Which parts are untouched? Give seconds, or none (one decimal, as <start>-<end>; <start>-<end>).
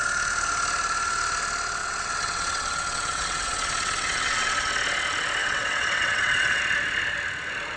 0.0-1.8; 4.7-5.4; 6.6-7.8